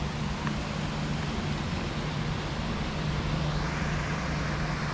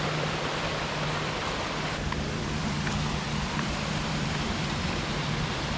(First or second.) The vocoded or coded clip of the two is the second